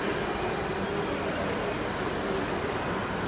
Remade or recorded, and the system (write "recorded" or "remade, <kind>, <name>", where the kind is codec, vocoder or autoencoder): recorded